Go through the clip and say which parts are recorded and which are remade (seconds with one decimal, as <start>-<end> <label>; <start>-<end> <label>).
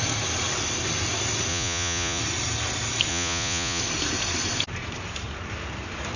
0.0-1.5 recorded; 1.5-2.2 remade; 2.2-3.1 recorded; 3.1-3.8 remade; 3.8-6.2 recorded